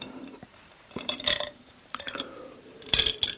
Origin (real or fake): fake